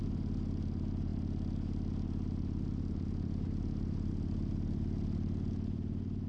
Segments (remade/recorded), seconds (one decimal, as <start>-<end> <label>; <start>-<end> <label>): 0.0-6.3 recorded

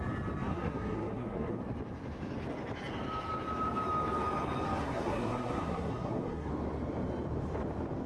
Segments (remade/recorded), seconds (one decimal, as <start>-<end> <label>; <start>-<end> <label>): 0.0-0.5 recorded; 0.5-1.6 remade; 1.6-4.8 recorded; 4.8-6.5 remade; 6.5-8.1 recorded

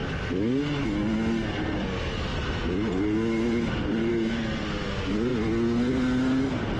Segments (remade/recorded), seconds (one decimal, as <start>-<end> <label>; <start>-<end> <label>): 0.0-6.8 recorded